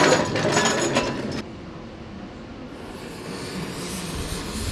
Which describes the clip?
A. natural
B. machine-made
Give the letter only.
A